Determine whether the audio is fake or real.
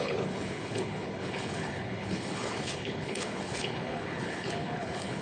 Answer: fake